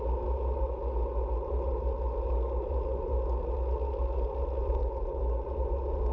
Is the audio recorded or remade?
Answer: recorded